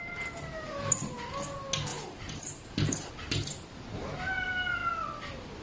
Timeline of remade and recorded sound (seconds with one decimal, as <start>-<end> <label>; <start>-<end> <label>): 0.0-1.9 recorded; 1.9-3.1 remade; 3.1-5.6 recorded